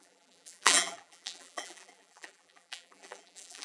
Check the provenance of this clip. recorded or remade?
remade